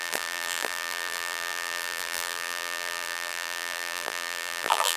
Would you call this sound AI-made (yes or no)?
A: yes